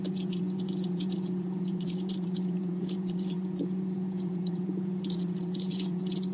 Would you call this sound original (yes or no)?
no